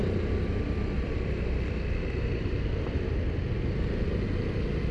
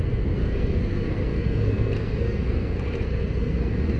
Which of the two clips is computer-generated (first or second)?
second